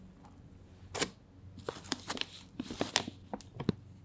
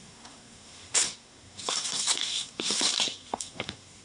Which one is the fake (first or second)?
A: second